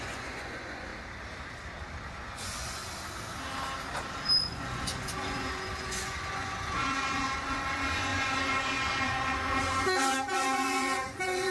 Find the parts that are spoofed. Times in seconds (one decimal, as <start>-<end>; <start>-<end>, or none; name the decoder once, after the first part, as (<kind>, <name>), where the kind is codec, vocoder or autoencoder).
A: 0.0-0.9 (vocoder, Vocos); 2.2-2.8; 4.4-11.5